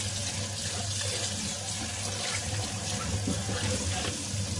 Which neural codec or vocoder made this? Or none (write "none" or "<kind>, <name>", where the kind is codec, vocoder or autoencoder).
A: none